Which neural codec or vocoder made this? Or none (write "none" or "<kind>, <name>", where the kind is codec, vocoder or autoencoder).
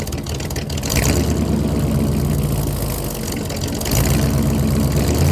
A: none